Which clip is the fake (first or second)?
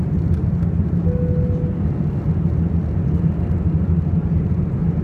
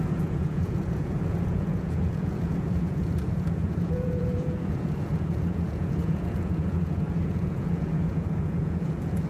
second